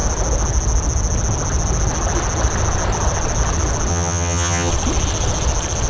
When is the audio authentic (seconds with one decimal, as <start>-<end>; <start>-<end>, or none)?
0.0-3.9; 4.7-5.9